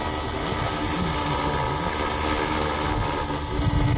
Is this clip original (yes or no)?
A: yes